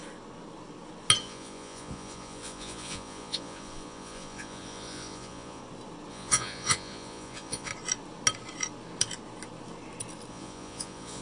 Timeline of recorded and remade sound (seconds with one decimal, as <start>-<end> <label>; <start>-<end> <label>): 0.0-1.2 recorded; 1.2-5.6 remade; 5.6-6.1 recorded; 6.1-7.7 remade; 7.7-10.3 recorded; 10.3-11.2 remade